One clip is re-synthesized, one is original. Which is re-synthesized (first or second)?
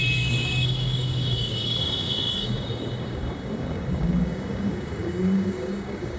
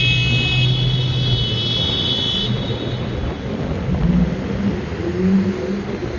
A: first